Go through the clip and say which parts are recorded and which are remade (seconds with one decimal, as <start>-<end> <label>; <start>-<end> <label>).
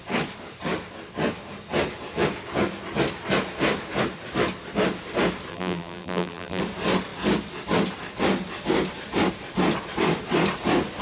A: 0.0-5.5 recorded; 5.5-6.6 remade; 6.6-11.0 recorded